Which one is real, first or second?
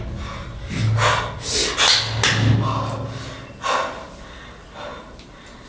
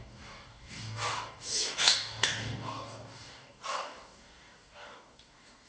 first